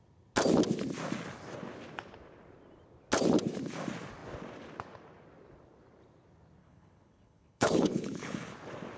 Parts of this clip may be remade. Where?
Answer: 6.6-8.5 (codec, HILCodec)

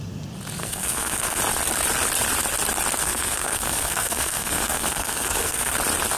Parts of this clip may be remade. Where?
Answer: 0.6-1.4 (codec, SNAC); 3.0-5.7

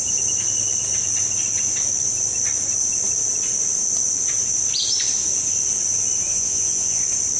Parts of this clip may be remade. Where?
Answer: 6.3-7.0 (vocoder, Vocos)

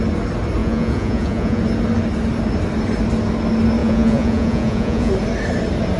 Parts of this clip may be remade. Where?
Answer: 0.6-1.6 (vocoder, Vocos); 3.8-5.1

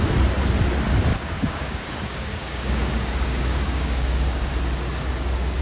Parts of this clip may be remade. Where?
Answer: 1.1-4.5 (codec, DAC)

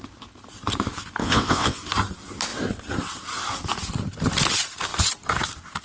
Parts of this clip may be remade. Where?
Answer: 1.2-1.8 (vocoder, WaveNeXt)